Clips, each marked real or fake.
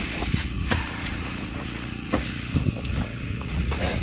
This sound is fake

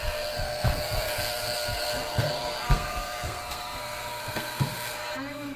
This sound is fake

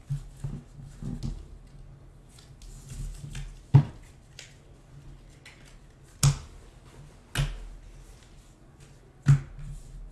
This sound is real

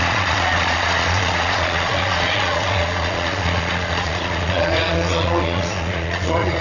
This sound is fake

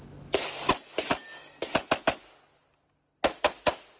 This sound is real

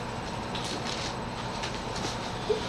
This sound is real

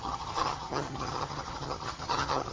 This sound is fake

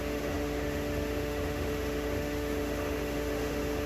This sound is fake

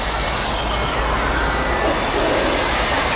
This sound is real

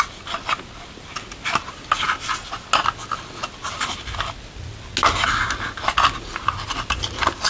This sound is real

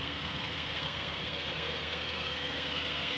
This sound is fake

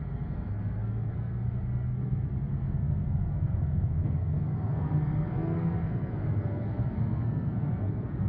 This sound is fake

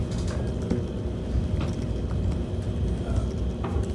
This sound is real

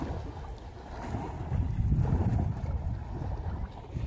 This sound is real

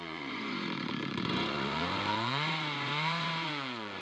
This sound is fake